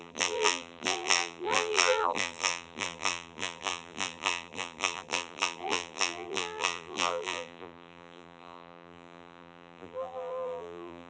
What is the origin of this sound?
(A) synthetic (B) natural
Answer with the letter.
A